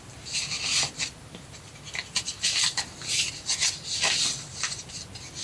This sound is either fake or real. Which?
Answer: real